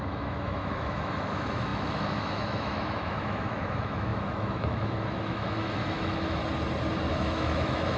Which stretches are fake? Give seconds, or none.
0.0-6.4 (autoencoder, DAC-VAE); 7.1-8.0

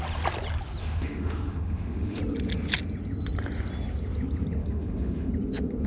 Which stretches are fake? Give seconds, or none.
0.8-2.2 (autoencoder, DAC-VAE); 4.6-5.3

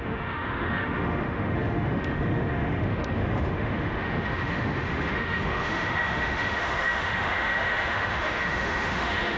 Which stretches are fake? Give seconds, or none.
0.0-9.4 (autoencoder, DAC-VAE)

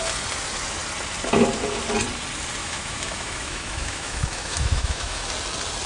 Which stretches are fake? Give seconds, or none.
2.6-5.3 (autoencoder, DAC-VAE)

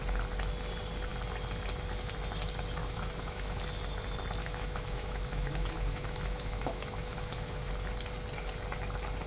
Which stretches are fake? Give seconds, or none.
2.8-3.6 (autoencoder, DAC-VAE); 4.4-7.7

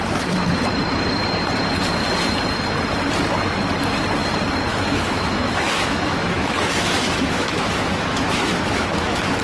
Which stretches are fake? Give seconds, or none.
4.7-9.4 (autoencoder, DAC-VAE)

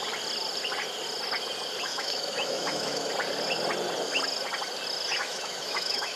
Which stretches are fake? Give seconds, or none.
1.9-3.1 (autoencoder, DAC-VAE); 5.2-6.2